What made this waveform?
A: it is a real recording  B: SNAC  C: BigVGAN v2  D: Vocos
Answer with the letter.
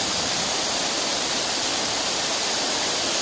C